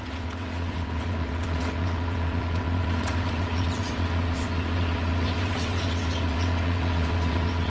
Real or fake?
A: fake